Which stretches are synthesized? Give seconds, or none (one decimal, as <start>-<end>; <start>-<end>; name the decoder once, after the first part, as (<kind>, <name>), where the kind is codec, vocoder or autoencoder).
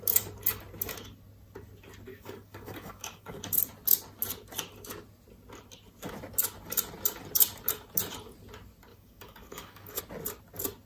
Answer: 2.1-3.4 (codec, DAC); 8.9-10.0